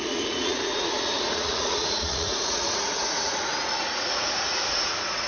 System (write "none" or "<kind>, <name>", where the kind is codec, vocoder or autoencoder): vocoder, Vocos